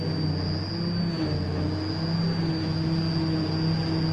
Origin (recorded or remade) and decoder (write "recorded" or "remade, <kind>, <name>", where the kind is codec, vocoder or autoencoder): recorded